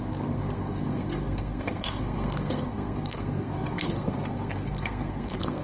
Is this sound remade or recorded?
remade